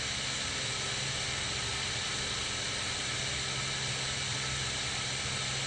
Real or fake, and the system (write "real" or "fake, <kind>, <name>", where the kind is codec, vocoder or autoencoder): real